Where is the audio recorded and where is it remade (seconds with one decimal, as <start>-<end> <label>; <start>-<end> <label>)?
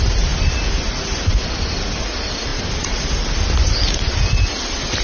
0.0-5.0 recorded